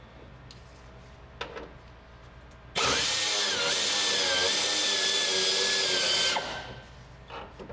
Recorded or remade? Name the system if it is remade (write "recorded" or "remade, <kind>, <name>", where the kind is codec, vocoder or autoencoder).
recorded